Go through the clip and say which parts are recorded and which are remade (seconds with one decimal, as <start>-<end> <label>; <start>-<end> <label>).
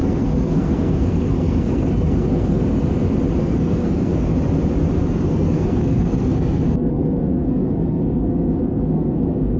0.0-2.6 remade; 2.6-3.4 recorded; 3.4-4.3 remade; 4.3-5.2 recorded; 5.2-9.6 remade